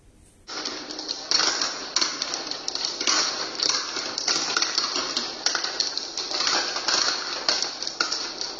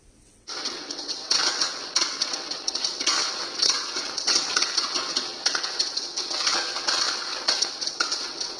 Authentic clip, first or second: first